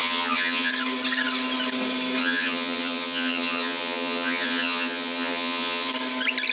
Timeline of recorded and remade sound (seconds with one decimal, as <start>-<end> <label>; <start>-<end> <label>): 0.0-0.7 remade; 0.7-2.2 recorded; 2.2-5.9 remade; 5.9-6.5 recorded